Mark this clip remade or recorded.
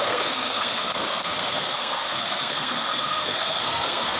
remade